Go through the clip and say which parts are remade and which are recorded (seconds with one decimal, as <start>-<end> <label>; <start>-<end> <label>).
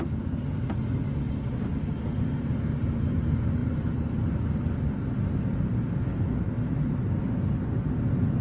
0.0-8.4 recorded